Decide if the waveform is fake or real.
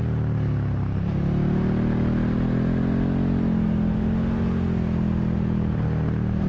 real